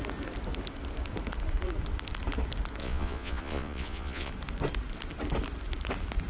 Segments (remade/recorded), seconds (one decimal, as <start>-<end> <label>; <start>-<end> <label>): 0.0-2.8 recorded; 2.8-4.3 remade; 4.3-6.3 recorded